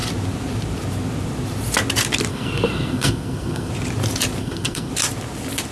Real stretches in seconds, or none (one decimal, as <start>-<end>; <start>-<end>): 0.0-2.3; 3.7-4.4; 4.9-5.7